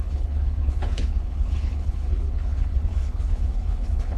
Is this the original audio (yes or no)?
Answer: no